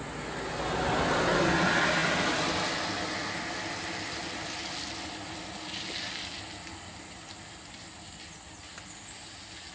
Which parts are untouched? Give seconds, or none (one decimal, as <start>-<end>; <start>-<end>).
0.0-9.7